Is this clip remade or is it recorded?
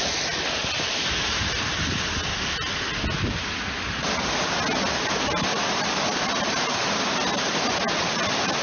recorded